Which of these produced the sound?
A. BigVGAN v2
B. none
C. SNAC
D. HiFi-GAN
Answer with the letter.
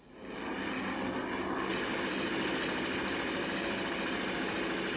B